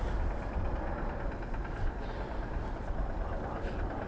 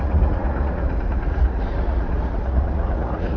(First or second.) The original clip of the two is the first